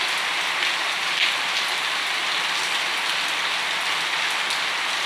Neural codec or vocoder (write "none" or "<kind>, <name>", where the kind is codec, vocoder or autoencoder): none